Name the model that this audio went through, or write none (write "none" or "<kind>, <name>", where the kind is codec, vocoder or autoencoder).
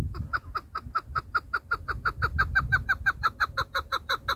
none